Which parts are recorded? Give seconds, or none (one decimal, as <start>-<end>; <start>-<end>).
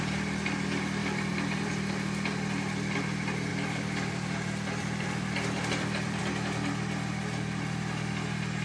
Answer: 0.0-1.0; 1.9-3.5; 6.2-8.6